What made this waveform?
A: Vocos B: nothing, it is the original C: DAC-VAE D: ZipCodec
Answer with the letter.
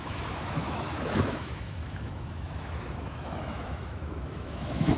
C